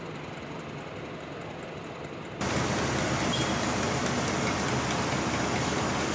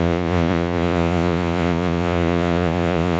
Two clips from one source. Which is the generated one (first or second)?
second